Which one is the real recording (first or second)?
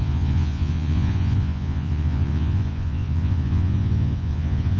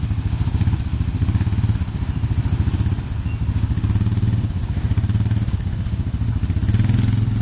second